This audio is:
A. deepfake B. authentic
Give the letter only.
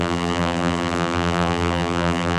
A